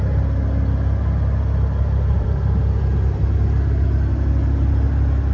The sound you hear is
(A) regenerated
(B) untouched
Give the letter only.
B